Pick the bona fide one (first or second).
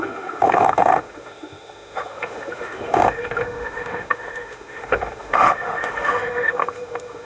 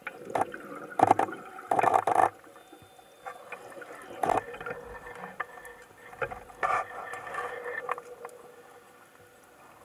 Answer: second